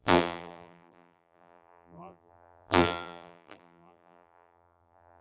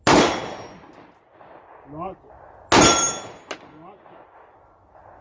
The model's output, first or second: first